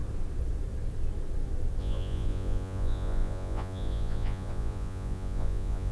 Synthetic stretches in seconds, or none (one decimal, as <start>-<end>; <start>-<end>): 1.8-5.9

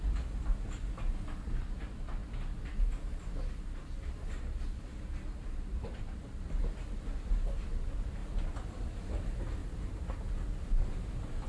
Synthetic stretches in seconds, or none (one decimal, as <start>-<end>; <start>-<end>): none

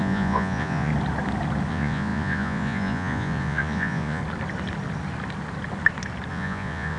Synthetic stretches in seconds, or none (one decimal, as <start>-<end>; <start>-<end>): 0.0-0.9; 1.7-4.2; 6.3-7.0

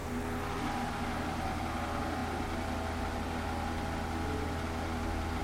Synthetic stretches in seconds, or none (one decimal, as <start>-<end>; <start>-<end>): none

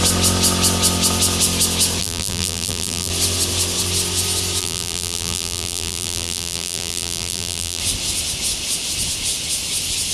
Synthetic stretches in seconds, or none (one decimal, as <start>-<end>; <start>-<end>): 2.0-3.1; 4.6-7.8

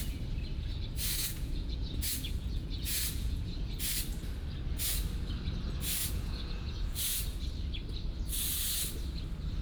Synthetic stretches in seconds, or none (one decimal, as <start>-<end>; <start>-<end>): 1.2-3.7; 6.0-7.5